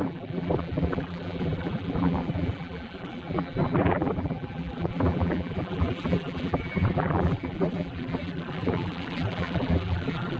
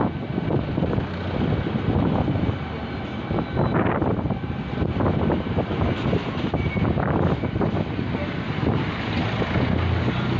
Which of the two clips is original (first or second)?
second